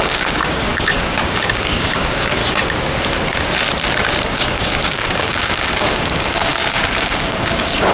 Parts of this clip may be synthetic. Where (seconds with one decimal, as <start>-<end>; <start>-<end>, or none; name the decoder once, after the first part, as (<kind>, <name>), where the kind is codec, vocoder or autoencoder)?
0.0-2.4 (codec, DAC); 4.2-7.9